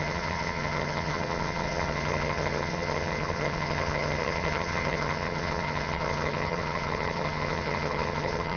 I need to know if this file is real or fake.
fake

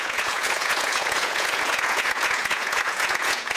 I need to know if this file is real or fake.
fake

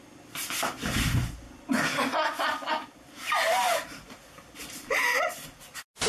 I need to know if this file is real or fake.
real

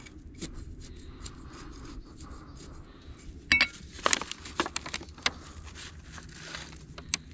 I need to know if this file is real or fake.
real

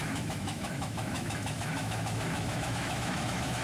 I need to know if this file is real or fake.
fake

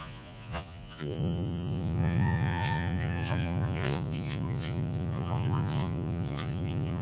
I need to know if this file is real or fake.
fake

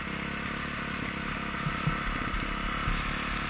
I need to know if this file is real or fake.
real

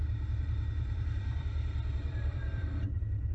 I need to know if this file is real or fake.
fake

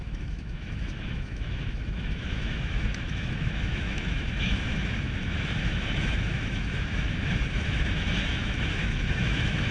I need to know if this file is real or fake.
fake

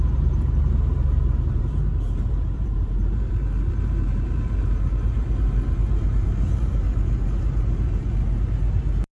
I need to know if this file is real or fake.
fake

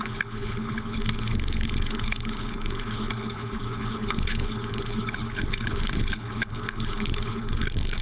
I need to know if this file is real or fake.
fake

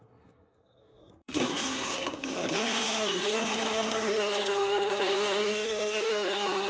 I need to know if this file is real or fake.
fake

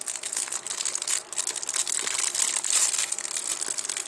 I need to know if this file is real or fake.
real